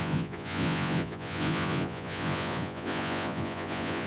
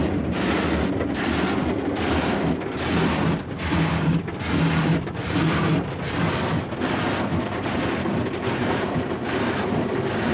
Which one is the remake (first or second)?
first